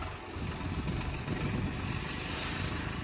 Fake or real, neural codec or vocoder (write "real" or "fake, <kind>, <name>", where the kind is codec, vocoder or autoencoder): real